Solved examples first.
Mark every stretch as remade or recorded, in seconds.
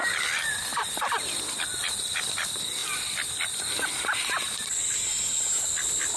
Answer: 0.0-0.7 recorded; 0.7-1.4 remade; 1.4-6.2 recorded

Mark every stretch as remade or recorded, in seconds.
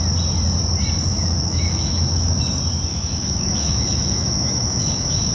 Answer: 0.0-1.1 recorded; 1.1-2.4 remade; 2.4-2.9 recorded; 2.9-5.3 remade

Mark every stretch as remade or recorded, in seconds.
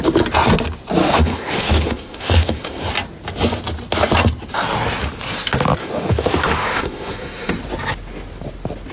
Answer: 0.0-1.0 recorded; 1.0-2.9 remade; 2.9-5.8 recorded; 5.8-7.5 remade; 7.5-8.9 recorded